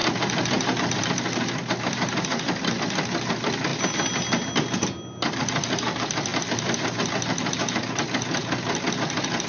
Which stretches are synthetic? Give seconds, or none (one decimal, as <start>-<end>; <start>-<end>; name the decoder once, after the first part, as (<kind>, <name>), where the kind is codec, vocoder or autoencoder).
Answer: 0.0-1.0 (vocoder, BigVGAN v2); 6.3-7.0